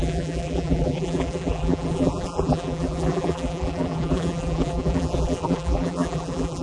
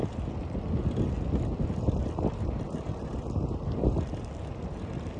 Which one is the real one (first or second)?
second